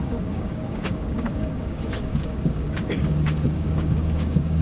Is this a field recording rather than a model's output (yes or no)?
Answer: no